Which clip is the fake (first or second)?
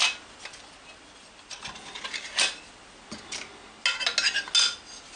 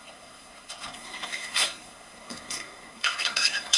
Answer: second